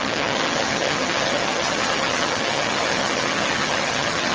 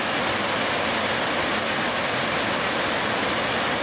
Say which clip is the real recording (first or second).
second